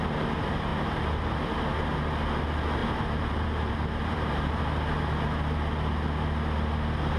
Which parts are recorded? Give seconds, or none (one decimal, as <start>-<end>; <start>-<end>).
0.0-2.8; 4.6-7.2